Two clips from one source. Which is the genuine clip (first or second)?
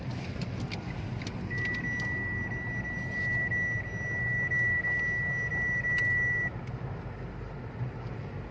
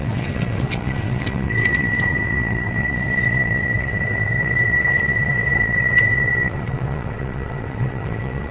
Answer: first